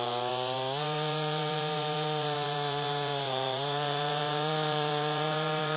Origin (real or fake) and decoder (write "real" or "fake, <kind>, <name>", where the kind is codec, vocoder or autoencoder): fake, vocoder, BigVGAN v2